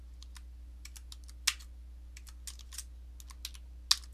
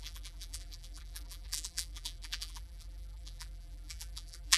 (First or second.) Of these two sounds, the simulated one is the second